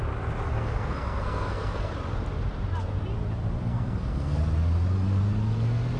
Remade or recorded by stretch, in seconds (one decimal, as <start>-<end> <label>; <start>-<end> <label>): 0.0-0.5 recorded; 0.5-1.9 remade; 1.9-3.6 recorded; 3.6-4.4 remade; 4.4-6.0 recorded